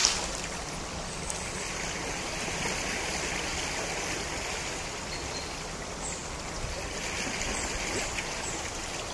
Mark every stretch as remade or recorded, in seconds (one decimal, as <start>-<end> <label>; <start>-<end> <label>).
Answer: 0.0-9.1 recorded